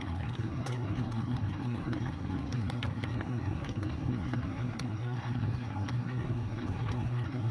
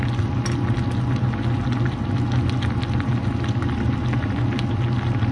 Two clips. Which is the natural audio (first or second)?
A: second